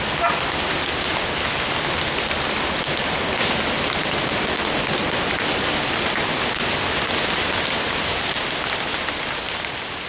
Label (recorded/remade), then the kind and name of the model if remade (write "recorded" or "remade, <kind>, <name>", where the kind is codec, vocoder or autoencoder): recorded